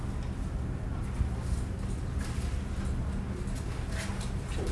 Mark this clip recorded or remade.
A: recorded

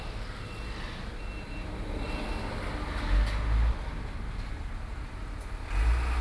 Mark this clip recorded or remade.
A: recorded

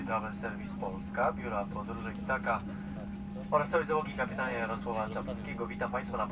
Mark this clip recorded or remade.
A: recorded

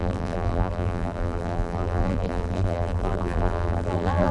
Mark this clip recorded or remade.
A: remade